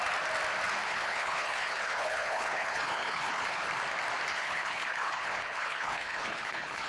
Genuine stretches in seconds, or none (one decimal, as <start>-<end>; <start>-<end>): 0.0-0.9; 3.7-4.3